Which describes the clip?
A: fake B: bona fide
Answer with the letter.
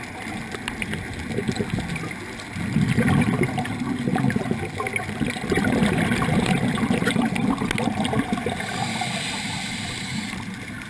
B